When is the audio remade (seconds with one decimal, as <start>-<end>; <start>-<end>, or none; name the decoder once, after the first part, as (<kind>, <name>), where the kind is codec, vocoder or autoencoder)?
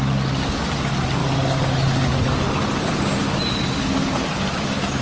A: none